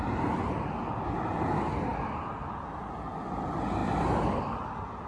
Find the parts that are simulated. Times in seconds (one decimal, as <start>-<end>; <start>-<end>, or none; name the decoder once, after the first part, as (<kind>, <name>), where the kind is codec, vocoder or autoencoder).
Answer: none